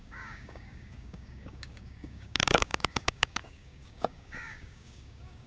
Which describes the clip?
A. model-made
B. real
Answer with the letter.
A